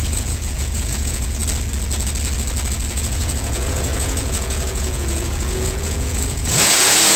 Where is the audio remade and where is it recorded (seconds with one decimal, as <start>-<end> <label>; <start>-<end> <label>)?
0.0-1.4 remade; 1.4-2.9 recorded; 2.9-7.2 remade